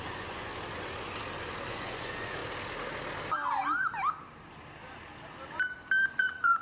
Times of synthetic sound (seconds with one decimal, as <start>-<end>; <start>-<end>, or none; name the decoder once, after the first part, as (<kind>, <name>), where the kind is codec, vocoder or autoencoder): 0.0-0.5 (vocoder, Vocos); 1.7-2.4; 6.1-6.6